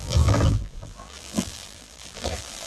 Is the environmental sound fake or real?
fake